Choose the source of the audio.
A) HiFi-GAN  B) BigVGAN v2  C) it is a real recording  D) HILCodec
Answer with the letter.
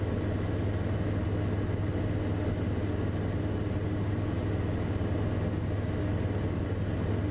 C